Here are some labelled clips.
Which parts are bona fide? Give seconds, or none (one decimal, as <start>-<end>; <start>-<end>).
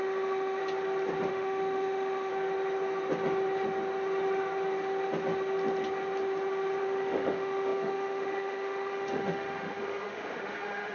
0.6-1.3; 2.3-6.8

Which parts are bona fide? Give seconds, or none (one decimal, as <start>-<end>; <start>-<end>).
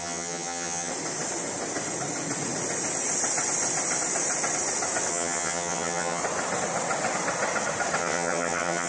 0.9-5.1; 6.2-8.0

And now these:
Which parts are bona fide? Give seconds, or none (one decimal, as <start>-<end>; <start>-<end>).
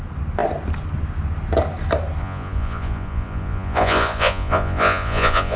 0.0-2.2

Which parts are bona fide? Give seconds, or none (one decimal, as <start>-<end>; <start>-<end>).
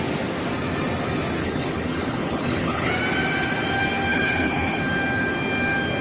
0.0-1.4; 2.9-4.1; 4.8-6.0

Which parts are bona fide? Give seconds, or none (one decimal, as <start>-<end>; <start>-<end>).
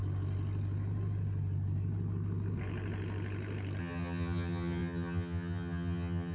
0.0-3.8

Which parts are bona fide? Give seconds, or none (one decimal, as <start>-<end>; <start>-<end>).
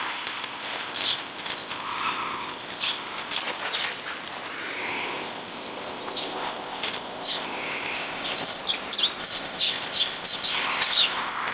3.4-4.8; 8.6-9.2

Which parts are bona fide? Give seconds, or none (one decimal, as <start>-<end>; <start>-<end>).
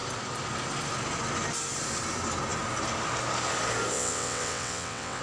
0.0-3.9